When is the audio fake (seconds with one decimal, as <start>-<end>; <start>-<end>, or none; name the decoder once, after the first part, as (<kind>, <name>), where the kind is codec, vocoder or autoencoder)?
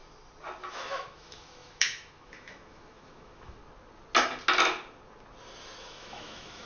0.7-3.6 (autoencoder, DAC-VAE); 5.8-6.7